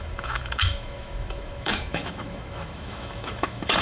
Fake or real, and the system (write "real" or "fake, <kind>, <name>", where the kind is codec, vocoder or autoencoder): fake, autoencoder, DAC-VAE